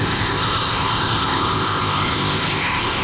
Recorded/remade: remade